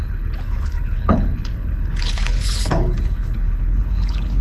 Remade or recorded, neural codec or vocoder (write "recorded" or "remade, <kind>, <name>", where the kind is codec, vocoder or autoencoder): remade, codec, HILCodec